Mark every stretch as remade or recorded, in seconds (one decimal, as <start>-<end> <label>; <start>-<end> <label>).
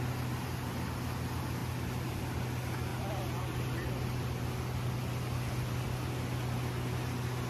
0.0-7.5 recorded